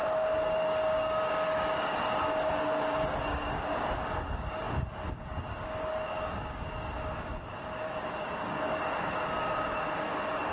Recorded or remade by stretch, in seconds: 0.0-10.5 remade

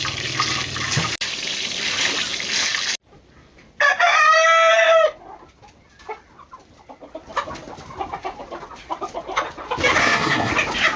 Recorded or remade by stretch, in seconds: 0.0-10.0 recorded; 10.0-10.5 remade; 10.5-11.0 recorded

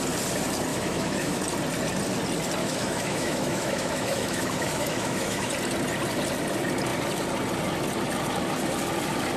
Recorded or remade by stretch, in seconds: 0.0-0.7 recorded; 0.7-1.4 remade; 1.4-2.6 recorded; 2.6-5.5 remade; 5.5-9.4 recorded

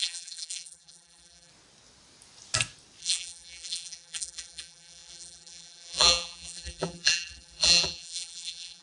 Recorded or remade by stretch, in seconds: 0.0-1.5 remade; 1.5-3.0 recorded; 3.0-8.8 remade

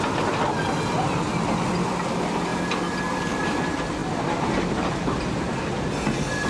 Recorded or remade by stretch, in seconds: 0.0-6.5 recorded

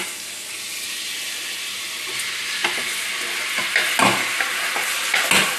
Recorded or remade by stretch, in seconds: 0.0-5.6 recorded

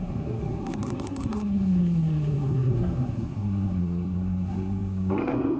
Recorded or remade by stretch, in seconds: 0.0-5.6 remade

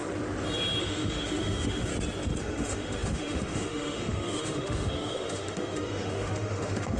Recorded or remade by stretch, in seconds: 0.0-0.8 recorded; 0.8-1.9 remade; 1.9-2.4 recorded; 2.4-7.0 remade